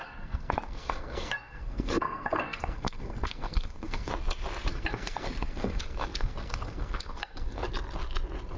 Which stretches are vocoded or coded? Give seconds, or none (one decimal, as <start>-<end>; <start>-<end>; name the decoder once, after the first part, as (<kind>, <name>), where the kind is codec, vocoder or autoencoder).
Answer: 0.0-4.1 (codec, SNAC); 4.7-7.6